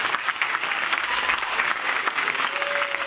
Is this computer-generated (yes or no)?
yes